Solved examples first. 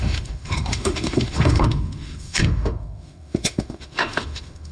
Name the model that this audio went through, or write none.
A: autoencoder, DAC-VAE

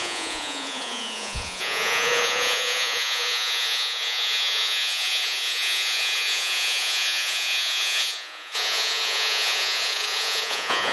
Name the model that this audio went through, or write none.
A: vocoder, Vocos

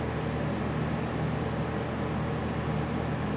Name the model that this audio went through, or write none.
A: none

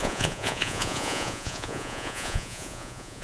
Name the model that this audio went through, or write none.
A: vocoder, Vocos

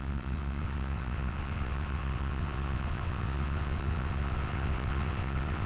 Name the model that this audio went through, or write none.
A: vocoder, WaveNeXt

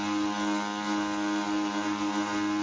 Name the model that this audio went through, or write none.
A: none